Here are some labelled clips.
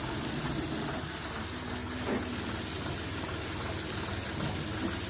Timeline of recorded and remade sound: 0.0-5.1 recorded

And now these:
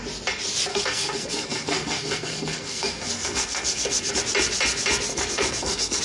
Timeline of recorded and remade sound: 0.0-0.7 recorded; 0.7-4.1 remade; 4.1-5.1 recorded; 5.1-6.0 remade

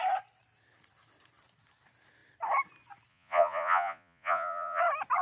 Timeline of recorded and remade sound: 0.0-3.1 recorded; 3.1-4.8 remade; 4.8-5.2 recorded

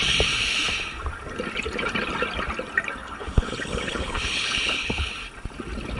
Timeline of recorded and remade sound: 0.0-3.0 recorded; 3.0-5.1 remade; 5.1-6.0 recorded

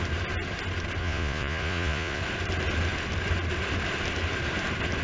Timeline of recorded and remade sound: 0.0-1.0 recorded; 1.0-2.2 remade; 2.2-5.0 recorded

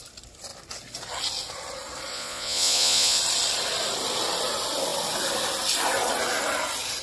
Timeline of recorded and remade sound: 0.0-2.1 recorded; 2.1-3.2 remade; 3.2-7.0 recorded

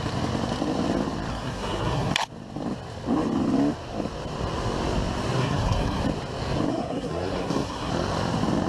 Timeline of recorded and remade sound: 0.0-1.3 recorded; 1.3-2.1 remade; 2.1-5.4 recorded; 5.4-6.0 remade; 6.0-6.7 recorded; 6.7-7.9 remade; 7.9-8.7 recorded